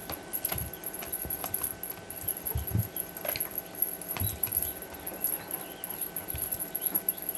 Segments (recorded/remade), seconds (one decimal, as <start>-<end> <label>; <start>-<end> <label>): 0.0-7.4 recorded